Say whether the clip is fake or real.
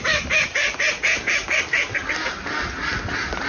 real